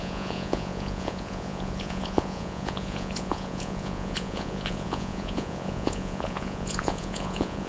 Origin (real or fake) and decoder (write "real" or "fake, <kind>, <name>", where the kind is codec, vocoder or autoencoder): fake, vocoder, Vocos